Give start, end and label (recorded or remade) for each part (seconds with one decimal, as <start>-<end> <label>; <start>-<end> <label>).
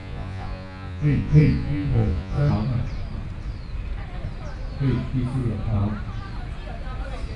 0.0-2.5 remade; 2.5-7.4 recorded